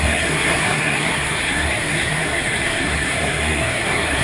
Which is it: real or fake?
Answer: fake